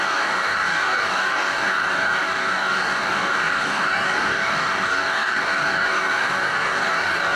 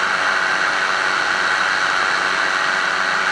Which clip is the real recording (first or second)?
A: second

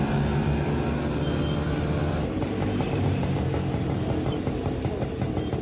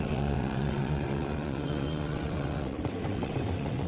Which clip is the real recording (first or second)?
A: first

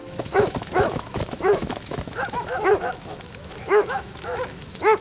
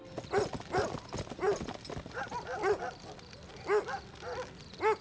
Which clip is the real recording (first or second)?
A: second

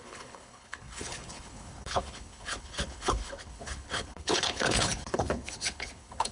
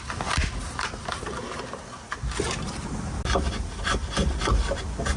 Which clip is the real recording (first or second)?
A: second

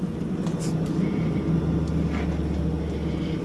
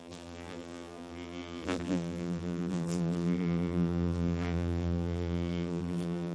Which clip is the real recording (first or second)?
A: first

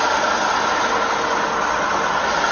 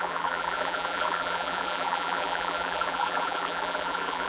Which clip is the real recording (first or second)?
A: first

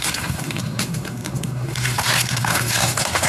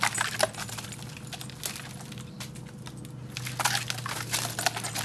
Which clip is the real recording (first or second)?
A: second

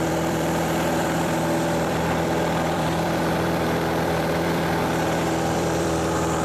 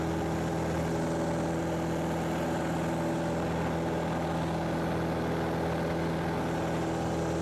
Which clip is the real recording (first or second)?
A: second